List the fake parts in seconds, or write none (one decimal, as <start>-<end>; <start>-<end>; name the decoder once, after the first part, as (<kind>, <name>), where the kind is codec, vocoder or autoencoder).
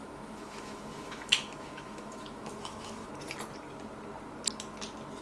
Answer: 0.0-3.1 (autoencoder, DAC-VAE)